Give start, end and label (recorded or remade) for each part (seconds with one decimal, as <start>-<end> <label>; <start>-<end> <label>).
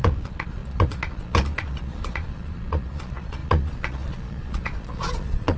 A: 0.0-5.6 remade